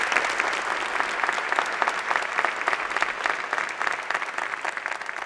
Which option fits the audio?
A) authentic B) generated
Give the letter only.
A